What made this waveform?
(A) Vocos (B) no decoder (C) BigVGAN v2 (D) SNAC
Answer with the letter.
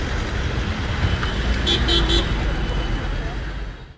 B